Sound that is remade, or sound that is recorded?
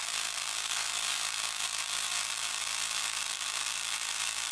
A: remade